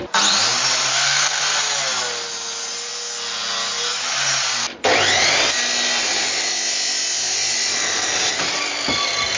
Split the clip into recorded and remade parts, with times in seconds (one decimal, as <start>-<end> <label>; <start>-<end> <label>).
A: 0.0-0.9 recorded; 0.9-1.4 remade; 1.4-9.4 recorded

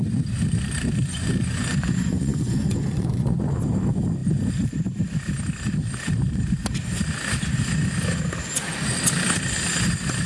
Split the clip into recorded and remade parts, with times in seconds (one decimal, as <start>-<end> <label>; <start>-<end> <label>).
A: 0.0-1.1 recorded; 1.1-3.4 remade; 3.4-10.3 recorded